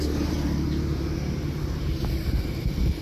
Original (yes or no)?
no